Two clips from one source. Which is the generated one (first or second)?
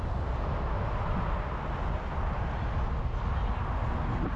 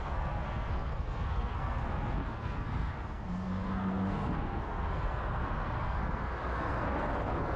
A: second